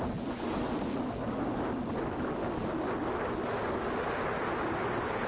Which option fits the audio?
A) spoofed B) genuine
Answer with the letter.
B